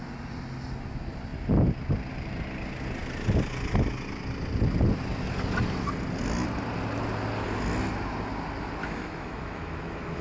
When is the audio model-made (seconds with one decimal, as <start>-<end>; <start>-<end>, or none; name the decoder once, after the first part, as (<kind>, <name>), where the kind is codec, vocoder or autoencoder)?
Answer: 8.8-10.2 (autoencoder, DAC-VAE)